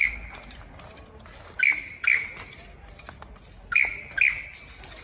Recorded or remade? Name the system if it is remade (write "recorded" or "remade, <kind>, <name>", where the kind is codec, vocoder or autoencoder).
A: recorded